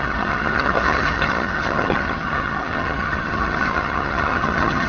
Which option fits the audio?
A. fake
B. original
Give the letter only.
A